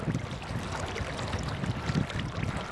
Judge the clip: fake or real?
real